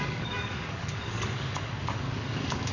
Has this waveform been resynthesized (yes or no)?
yes